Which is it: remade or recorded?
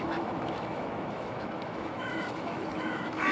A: remade